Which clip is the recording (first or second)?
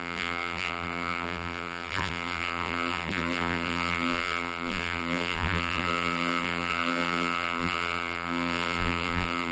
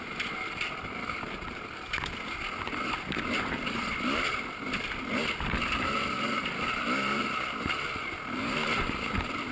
second